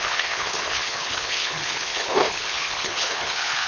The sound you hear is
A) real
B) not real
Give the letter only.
B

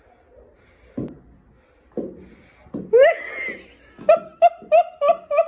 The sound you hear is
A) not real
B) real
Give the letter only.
B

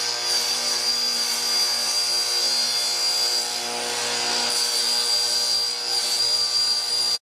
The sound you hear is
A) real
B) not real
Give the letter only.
A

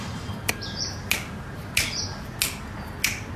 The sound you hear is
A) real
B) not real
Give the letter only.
A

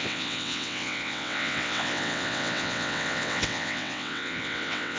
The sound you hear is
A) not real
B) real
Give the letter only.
A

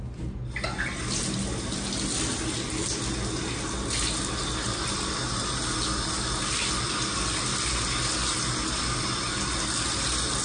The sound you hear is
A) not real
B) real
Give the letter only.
B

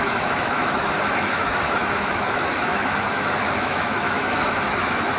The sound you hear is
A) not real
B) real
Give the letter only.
A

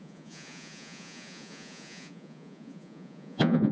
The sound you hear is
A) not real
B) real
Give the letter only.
A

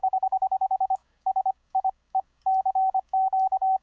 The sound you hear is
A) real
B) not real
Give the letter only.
B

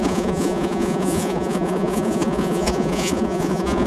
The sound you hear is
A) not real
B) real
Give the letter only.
A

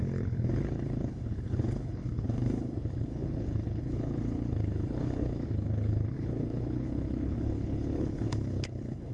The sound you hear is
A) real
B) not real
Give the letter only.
B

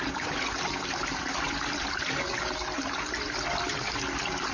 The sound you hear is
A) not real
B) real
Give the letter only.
B